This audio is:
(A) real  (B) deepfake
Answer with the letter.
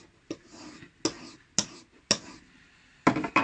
A